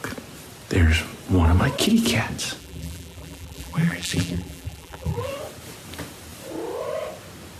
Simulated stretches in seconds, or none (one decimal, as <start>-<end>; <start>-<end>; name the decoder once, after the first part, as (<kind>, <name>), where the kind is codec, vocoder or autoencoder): 2.6-5.3 (vocoder, BigVGAN v2)